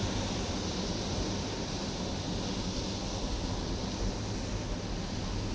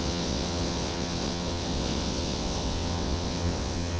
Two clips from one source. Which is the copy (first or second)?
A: second